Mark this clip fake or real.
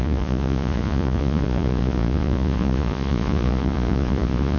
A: fake